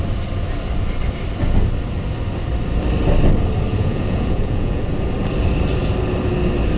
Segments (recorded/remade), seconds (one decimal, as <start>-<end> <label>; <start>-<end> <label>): 0.0-3.7 recorded; 3.7-4.8 remade; 4.8-6.8 recorded